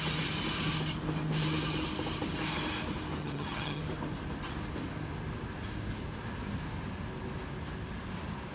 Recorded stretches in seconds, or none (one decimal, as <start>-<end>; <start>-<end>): 0.0-3.2; 3.8-8.5